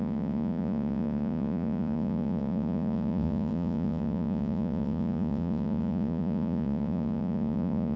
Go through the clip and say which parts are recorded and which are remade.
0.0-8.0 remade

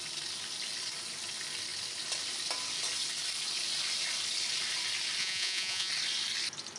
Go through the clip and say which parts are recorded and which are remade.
0.0-5.2 recorded; 5.2-5.9 remade; 5.9-6.8 recorded

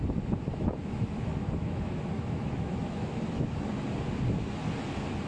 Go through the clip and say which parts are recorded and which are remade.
0.0-0.5 recorded; 0.5-3.7 remade; 3.7-5.3 recorded

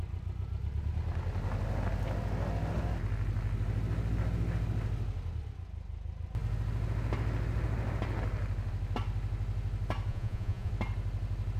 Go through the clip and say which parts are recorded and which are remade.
0.0-10.1 recorded; 10.1-10.7 remade; 10.7-11.6 recorded

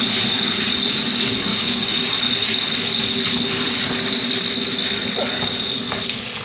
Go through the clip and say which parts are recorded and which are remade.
0.0-1.5 recorded; 1.5-2.2 remade; 2.2-6.4 recorded

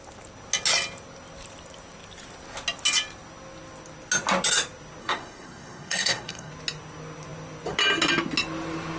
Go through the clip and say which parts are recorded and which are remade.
0.0-5.0 recorded; 5.0-6.5 remade; 6.5-9.0 recorded

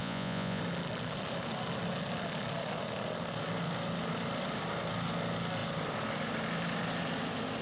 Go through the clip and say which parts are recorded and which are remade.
0.0-0.6 remade; 0.6-7.6 recorded

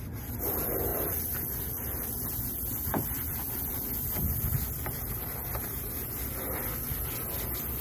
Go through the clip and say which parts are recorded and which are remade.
0.0-7.8 recorded